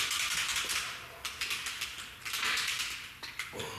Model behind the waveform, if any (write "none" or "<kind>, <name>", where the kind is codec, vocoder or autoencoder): none